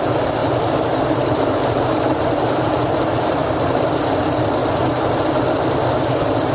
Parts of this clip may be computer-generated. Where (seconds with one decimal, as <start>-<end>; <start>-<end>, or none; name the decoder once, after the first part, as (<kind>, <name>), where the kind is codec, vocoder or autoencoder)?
0.4-3.8 (vocoder, BigVGAN v2); 4.6-5.2